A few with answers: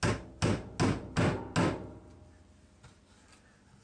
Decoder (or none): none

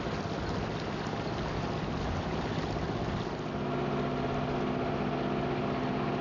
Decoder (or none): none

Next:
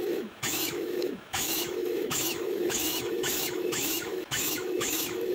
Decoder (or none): autoencoder, DAC-VAE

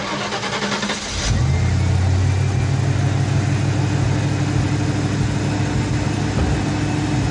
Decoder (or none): none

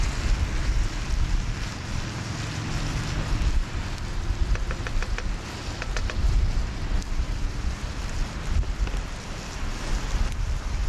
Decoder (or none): none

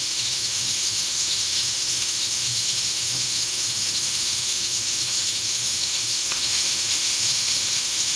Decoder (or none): autoencoder, DAC-VAE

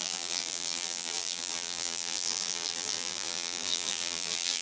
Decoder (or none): vocoder, BigVGAN v2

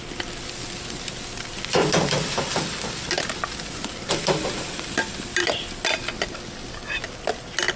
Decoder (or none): none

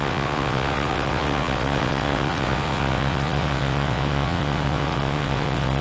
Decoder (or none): vocoder, WaveNeXt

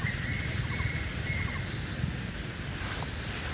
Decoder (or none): none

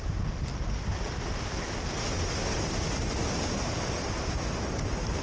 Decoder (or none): none